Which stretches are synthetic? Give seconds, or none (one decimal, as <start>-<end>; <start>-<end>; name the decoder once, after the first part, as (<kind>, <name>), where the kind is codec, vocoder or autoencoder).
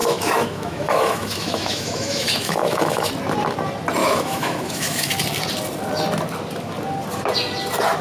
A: 0.0-3.1 (autoencoder, DAC-VAE); 4.0-5.1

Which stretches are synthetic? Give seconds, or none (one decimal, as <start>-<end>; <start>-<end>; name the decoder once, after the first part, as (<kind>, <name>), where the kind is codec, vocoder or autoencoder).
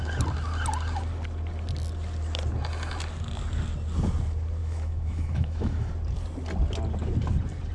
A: 4.6-5.9 (autoencoder, DAC-VAE)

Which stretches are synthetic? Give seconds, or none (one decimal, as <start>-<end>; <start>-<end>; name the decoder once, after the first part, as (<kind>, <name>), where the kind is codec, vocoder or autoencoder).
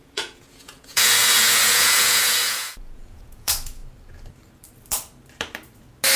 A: 0.0-3.8 (vocoder, Vocos)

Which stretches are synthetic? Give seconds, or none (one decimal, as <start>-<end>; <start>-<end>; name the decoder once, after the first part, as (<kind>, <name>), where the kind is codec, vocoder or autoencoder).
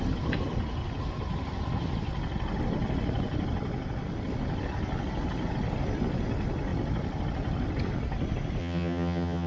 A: 8.6-9.5 (vocoder, HiFi-GAN)